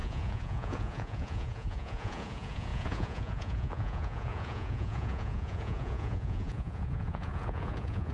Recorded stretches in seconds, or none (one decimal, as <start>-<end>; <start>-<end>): none